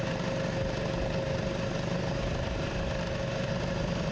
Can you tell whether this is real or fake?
real